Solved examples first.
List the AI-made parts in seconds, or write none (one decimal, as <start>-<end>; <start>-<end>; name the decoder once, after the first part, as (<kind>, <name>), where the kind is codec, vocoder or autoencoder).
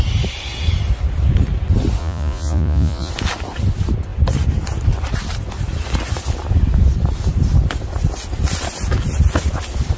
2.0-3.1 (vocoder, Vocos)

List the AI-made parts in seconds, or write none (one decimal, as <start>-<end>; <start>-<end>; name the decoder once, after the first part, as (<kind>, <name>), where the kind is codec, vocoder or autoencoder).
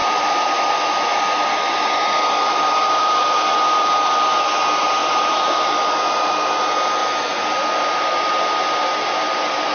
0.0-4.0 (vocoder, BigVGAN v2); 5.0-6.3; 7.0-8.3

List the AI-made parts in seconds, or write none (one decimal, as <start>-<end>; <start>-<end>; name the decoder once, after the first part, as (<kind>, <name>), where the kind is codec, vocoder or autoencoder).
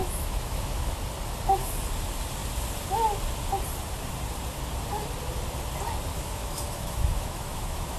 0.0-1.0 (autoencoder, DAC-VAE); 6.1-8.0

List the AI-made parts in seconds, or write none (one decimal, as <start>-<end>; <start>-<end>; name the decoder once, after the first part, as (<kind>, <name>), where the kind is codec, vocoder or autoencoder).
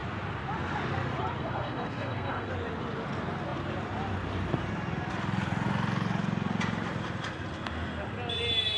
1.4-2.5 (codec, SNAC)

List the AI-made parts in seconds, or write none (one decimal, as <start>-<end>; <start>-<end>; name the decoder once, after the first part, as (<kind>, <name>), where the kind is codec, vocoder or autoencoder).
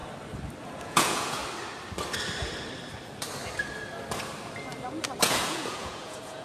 0.8-1.4 (vocoder, Vocos); 5.2-6.4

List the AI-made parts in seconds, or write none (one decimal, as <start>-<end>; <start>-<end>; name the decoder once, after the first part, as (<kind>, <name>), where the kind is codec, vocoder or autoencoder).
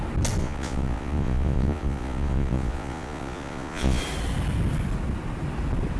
0.4-4.0 (vocoder, Vocos)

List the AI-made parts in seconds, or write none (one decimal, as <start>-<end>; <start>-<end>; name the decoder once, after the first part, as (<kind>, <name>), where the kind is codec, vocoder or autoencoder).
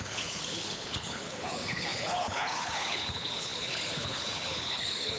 0.0-5.2 (codec, HILCodec)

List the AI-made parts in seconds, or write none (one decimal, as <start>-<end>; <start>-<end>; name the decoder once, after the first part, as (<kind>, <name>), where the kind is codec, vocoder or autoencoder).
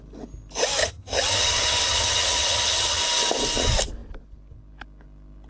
0.8-3.0 (vocoder, HiFi-GAN)